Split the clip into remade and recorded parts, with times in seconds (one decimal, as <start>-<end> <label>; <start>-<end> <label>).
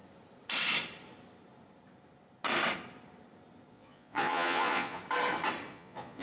0.0-3.7 recorded; 3.7-5.0 remade; 5.0-5.7 recorded; 5.7-6.2 remade